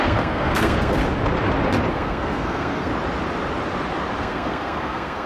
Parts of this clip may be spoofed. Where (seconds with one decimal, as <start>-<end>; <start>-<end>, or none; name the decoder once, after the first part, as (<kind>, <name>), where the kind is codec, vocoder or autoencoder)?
0.0-1.0 (codec, SNAC); 1.9-2.9; 4.2-5.3